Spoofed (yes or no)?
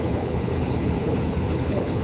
yes